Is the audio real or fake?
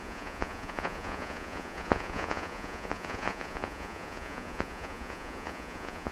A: fake